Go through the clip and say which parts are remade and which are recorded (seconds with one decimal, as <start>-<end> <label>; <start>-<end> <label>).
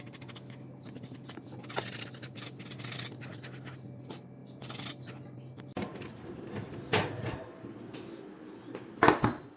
0.0-9.6 recorded